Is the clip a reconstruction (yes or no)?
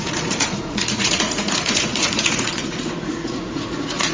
yes